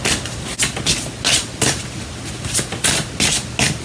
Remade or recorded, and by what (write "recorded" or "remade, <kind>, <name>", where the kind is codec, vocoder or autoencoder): recorded